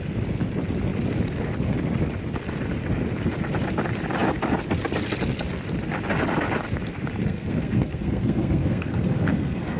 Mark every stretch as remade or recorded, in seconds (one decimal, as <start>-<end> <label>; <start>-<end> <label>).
0.0-7.2 recorded; 7.2-9.8 remade